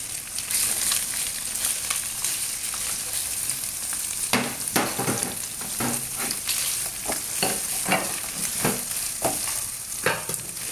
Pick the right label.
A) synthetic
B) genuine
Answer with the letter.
B